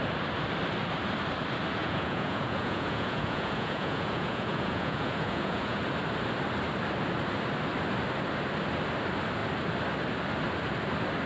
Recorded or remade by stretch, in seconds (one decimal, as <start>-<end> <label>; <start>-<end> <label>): 0.0-1.8 recorded; 1.8-5.8 remade; 5.8-11.3 recorded